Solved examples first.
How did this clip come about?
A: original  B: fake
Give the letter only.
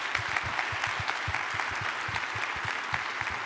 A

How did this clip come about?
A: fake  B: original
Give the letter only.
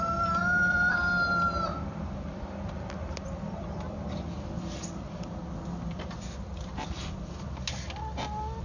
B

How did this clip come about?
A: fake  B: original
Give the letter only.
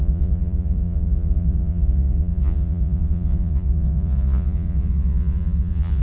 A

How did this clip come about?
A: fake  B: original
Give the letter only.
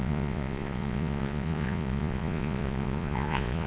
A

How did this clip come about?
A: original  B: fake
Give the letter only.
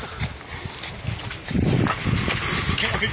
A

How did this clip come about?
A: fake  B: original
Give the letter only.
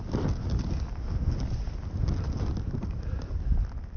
B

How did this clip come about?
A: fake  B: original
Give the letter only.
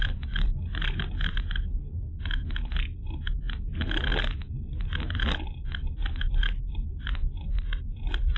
B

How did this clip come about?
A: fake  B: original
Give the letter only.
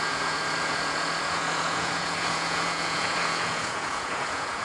A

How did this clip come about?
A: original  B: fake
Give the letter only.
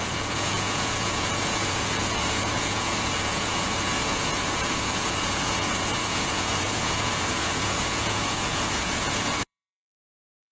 B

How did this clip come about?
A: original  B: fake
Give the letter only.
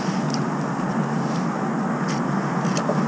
A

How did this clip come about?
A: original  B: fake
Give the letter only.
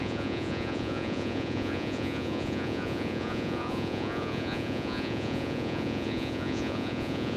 B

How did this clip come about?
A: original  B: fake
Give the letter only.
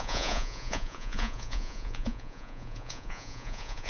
B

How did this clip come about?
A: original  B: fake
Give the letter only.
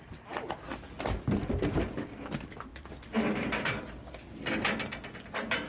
A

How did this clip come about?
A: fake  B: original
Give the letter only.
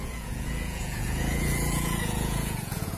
A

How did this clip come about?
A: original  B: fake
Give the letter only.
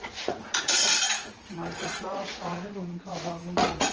B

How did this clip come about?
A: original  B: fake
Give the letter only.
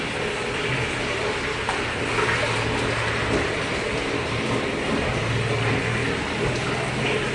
A